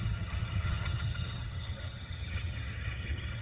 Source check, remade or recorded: remade